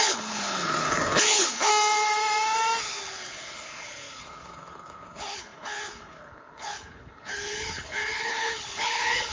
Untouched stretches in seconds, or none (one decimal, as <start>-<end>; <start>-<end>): 1.7-2.8